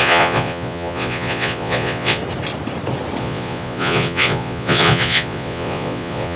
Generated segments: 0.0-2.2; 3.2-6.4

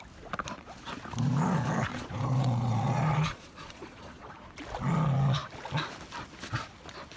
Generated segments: 1.9-4.3

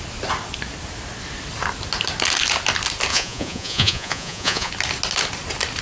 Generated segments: 3.1-4.7